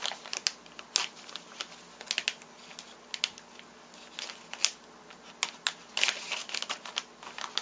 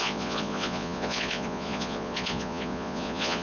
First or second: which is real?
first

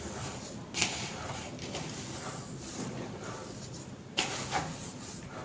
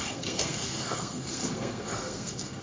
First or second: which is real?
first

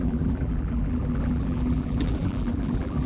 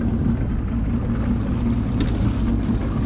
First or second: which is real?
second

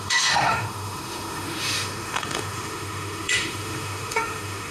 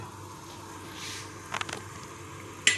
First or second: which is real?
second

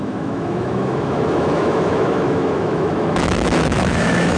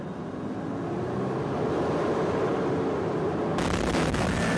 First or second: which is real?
second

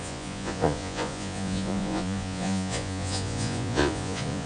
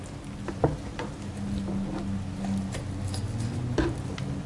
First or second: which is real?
second